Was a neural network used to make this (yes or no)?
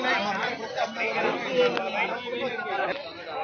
no